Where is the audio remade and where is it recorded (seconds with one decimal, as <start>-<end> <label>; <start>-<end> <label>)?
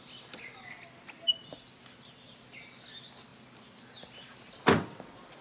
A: 0.0-5.4 recorded